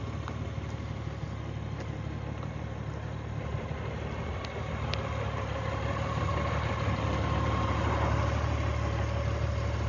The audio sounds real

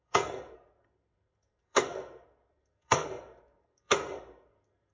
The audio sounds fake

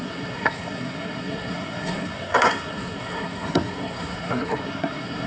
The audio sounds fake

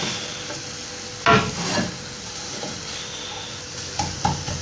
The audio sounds real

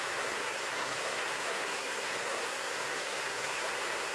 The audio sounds fake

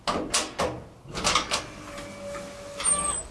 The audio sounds real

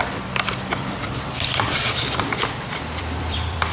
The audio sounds fake